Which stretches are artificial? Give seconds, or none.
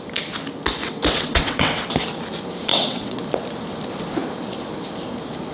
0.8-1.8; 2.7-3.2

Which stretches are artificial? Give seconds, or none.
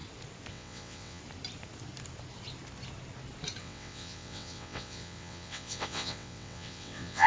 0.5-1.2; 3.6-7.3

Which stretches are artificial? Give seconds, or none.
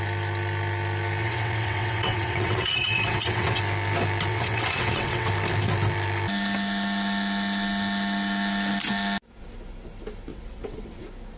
1.2-3.6; 4.3-5.3; 10.3-11.0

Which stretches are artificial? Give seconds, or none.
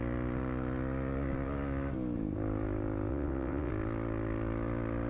3.1-3.7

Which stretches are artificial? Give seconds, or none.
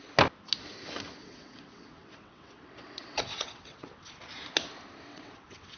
1.2-3.9; 5.1-5.8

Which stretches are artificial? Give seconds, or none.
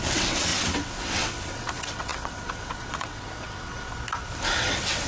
0.0-3.7; 4.5-5.1